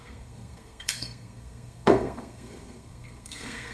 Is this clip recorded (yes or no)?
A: no